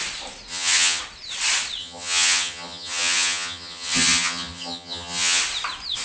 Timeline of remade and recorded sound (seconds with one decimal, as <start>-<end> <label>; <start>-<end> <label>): 0.0-0.5 recorded; 0.5-1.0 remade; 1.0-1.8 recorded; 1.8-5.4 remade; 5.4-6.0 recorded